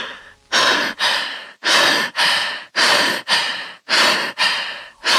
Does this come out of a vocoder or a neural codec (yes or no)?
yes